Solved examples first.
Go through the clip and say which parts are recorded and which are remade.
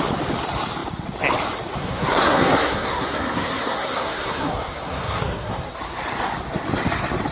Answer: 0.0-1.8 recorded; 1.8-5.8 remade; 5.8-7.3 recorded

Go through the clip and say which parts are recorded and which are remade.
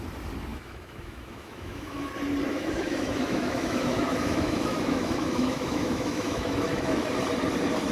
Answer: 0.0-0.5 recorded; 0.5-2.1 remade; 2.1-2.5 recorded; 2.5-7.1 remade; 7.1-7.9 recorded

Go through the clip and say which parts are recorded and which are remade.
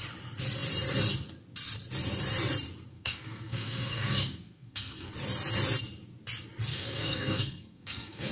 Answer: 0.0-2.9 recorded; 2.9-5.1 remade; 5.1-6.7 recorded; 6.7-8.3 remade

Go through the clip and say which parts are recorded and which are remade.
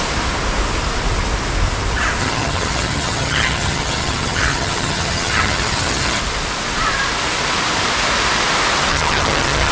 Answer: 0.0-2.2 recorded; 2.2-6.2 remade; 6.2-8.9 recorded; 8.9-9.7 remade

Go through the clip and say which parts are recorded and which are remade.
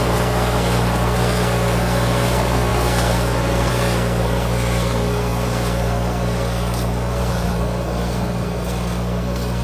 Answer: 0.0-9.6 remade